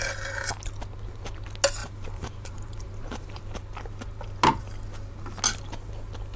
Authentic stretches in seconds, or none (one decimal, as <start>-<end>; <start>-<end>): 0.0-1.8; 3.4-6.4